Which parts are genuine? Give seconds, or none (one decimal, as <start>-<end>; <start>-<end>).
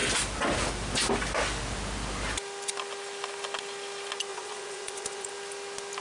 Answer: 0.0-4.3; 5.3-6.0